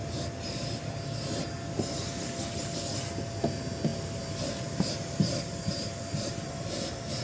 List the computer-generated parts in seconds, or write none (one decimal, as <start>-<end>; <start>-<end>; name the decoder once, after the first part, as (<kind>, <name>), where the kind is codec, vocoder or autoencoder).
none